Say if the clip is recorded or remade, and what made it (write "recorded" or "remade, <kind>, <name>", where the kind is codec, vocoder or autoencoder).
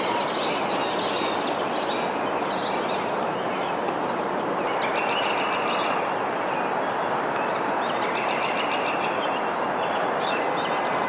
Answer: recorded